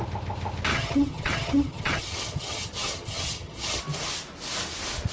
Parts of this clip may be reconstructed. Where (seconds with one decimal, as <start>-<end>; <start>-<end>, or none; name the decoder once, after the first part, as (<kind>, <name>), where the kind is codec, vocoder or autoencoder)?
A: 0.7-3.8 (vocoder, HiFi-GAN)